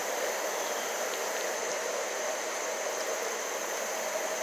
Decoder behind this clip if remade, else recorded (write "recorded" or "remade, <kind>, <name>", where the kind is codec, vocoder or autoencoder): recorded